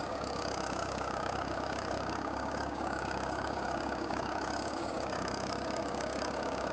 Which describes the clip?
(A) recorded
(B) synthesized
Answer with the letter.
B